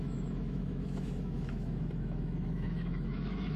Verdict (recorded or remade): remade